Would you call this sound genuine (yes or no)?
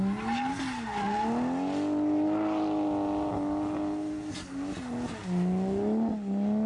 yes